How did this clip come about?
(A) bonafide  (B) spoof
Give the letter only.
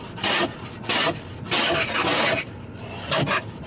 A